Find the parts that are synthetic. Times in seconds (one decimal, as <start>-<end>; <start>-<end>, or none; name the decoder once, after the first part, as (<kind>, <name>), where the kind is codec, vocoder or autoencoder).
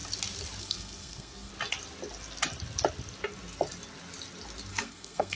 0.6-1.5 (codec, SNAC); 4.7-5.4